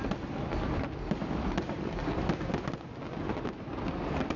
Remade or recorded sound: recorded